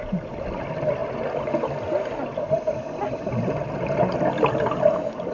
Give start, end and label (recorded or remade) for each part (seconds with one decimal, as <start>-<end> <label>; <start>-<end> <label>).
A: 0.0-5.3 recorded